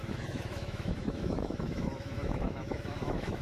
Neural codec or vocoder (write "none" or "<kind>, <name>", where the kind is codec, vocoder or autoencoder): autoencoder, DAC-VAE